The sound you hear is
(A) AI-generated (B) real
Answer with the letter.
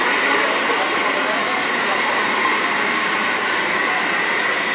A